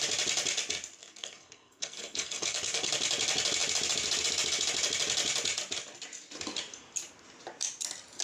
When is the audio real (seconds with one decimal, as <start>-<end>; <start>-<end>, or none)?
0.0-1.0; 2.9-8.2